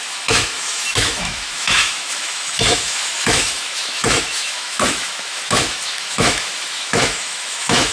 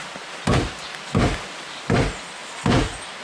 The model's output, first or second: first